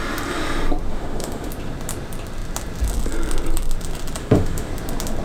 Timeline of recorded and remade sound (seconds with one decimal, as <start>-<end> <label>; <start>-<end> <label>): 0.0-0.9 recorded; 0.9-1.5 remade; 1.5-4.2 recorded; 4.2-4.7 remade; 4.7-5.2 recorded